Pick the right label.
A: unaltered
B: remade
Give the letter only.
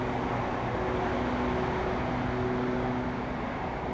A